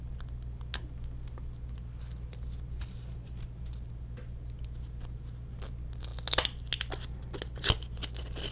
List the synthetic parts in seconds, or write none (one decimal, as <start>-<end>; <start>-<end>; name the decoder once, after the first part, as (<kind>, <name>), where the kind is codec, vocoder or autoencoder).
none